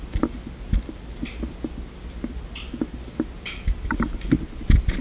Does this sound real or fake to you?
real